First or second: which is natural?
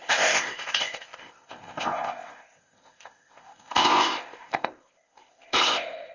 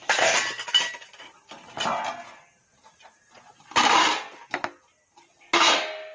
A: second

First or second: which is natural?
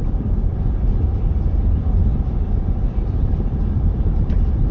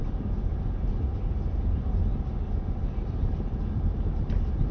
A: second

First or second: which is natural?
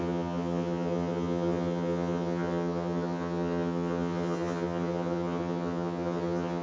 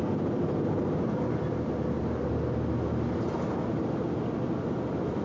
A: second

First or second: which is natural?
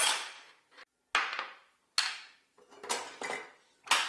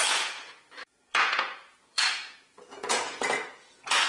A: first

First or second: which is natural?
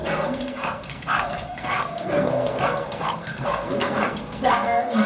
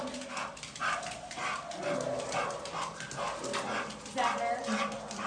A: second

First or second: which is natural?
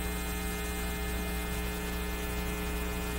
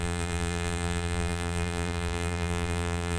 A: first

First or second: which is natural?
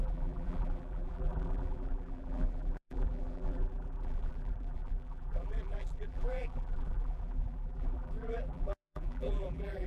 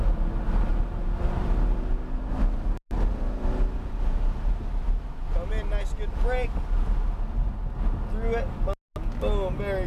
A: second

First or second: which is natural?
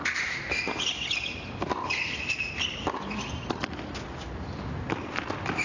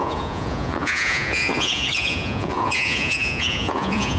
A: first